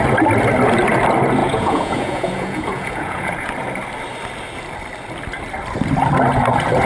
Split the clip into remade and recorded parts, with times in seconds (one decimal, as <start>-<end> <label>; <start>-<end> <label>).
0.0-1.4 recorded; 1.4-3.5 remade; 3.5-6.9 recorded